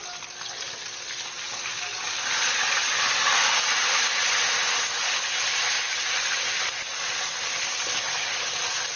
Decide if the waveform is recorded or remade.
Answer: recorded